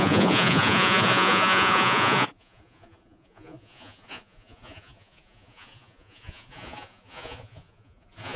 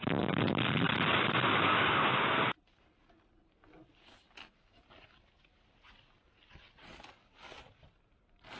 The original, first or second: second